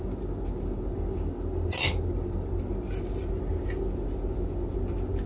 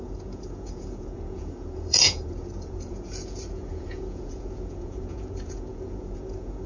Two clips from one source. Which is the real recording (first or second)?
first